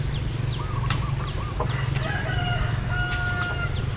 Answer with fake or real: real